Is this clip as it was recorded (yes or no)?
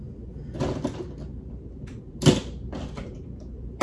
yes